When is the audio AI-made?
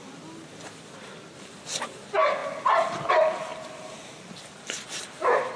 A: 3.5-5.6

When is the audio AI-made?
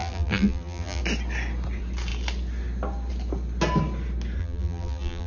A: 0.0-1.0; 4.4-5.3